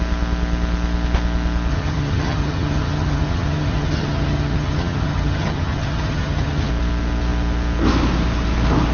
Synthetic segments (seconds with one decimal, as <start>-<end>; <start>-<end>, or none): 1.7-6.7